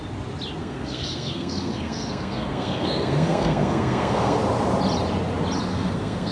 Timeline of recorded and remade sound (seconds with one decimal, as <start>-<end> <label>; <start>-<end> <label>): 0.0-0.6 recorded; 0.6-4.4 remade; 4.4-5.7 recorded; 5.7-6.3 remade